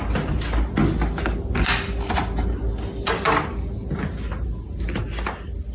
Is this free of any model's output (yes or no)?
yes